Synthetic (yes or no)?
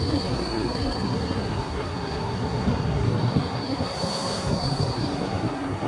yes